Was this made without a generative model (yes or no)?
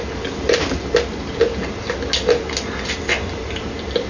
yes